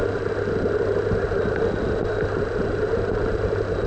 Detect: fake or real real